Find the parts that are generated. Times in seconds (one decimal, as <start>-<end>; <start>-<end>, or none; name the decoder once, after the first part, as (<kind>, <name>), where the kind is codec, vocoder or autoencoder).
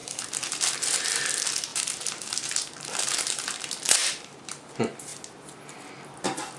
0.0-0.6 (vocoder, BigVGAN v2); 1.7-3.6; 4.0-4.5